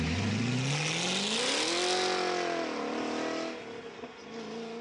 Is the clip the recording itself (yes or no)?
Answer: yes